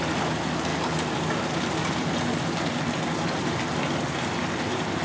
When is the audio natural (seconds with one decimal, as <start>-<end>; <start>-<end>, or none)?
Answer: 0.0-5.0